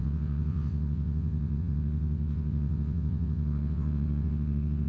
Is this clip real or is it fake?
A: fake